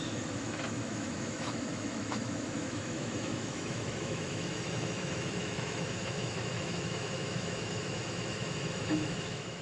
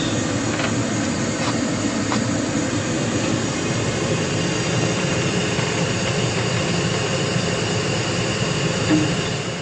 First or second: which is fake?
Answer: first